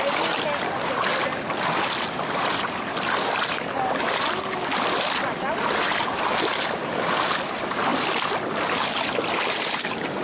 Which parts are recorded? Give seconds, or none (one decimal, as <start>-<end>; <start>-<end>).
0.0-10.2